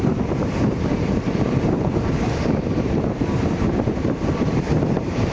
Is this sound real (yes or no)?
no